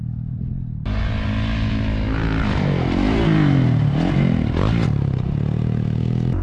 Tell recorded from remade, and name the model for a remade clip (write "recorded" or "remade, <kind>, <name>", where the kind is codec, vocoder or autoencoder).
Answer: recorded